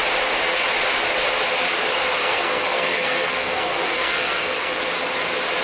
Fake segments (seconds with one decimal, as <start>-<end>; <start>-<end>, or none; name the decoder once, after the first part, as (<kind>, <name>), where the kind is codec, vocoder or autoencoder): 2.2-4.8 (codec, SNAC)